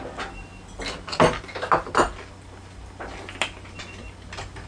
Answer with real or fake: real